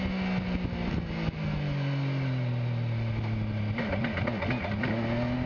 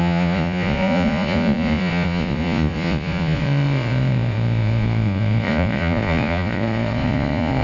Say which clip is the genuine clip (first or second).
first